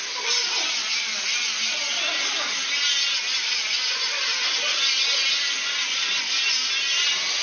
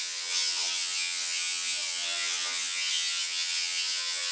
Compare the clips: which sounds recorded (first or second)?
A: first